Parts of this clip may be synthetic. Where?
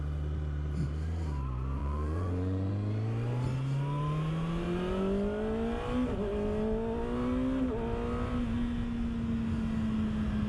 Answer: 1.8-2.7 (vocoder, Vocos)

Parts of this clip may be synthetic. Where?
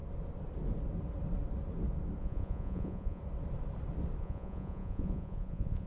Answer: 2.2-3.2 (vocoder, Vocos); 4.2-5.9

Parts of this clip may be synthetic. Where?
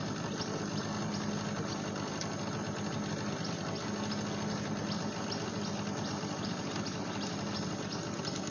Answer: none